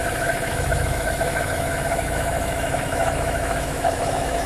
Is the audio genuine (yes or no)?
no